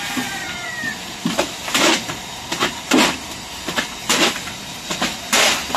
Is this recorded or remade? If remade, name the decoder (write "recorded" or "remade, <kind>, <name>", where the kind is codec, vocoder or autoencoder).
recorded